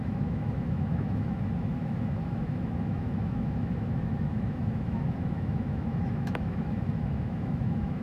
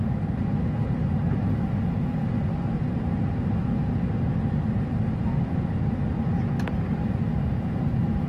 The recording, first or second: second